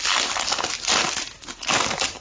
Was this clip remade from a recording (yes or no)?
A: no